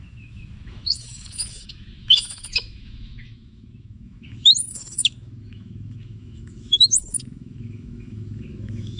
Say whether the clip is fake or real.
fake